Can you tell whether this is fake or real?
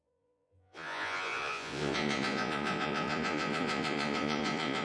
fake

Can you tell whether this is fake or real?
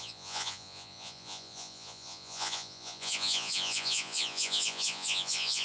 fake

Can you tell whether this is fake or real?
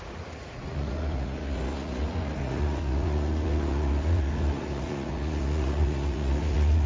fake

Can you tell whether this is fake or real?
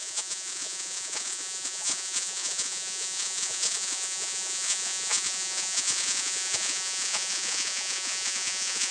fake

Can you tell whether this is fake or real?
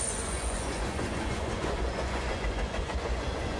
fake